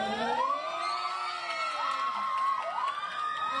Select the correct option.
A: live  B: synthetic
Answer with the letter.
A